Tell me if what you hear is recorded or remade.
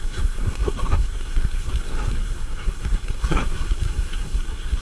remade